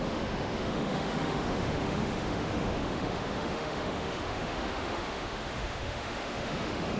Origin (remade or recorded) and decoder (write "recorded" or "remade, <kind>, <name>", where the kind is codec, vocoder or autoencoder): remade, autoencoder, DAC-VAE